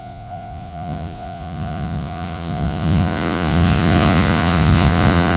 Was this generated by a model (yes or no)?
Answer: yes